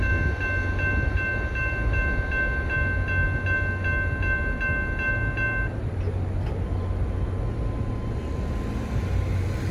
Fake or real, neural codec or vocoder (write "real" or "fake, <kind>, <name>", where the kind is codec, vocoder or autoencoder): real